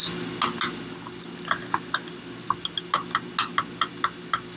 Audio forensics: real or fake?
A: real